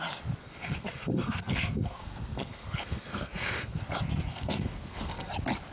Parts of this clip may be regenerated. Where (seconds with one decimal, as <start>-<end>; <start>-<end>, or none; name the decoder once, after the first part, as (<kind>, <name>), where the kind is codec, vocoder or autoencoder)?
0.4-3.8 (codec, SNAC); 4.3-5.3